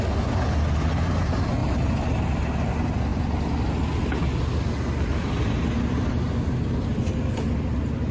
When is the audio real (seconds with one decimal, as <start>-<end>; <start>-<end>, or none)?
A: 0.0-1.6; 2.4-8.1